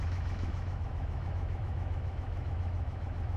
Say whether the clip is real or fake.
fake